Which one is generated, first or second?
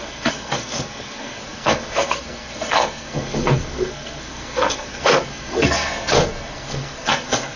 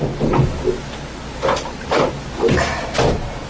first